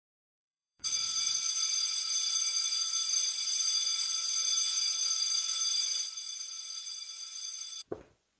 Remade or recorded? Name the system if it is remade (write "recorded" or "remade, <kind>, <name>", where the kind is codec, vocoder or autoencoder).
remade, vocoder, Vocos